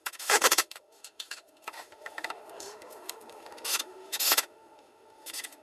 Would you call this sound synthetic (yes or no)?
yes